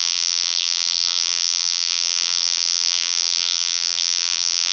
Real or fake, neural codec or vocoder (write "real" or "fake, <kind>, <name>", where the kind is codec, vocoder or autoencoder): fake, vocoder, BigVGAN v2